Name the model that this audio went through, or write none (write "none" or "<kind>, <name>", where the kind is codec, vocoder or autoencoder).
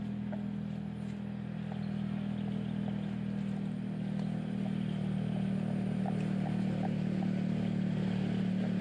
none